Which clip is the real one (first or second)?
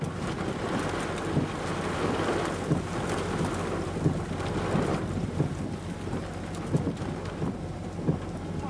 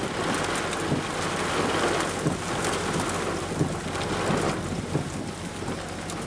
second